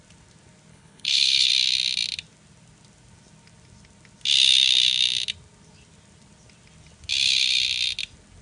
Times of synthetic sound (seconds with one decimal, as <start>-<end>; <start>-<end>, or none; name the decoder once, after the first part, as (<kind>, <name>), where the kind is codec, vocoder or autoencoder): 0.7-1.5 (codec, HILCodec)